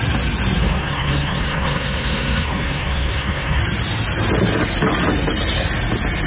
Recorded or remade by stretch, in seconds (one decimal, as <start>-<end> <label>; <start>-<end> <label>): 0.0-0.6 recorded; 0.6-3.6 remade; 3.6-6.3 recorded